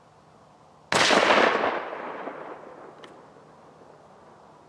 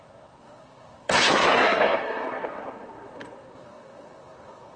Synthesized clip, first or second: second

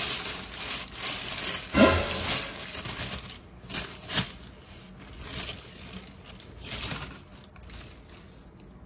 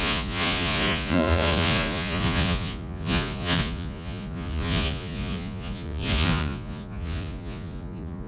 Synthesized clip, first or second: second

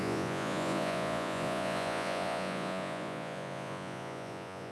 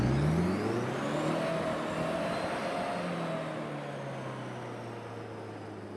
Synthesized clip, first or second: first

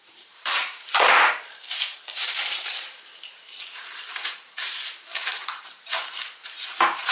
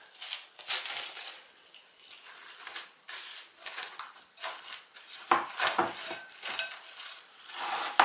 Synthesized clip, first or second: first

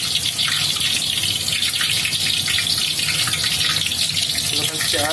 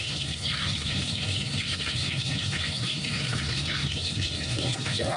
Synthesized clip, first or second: second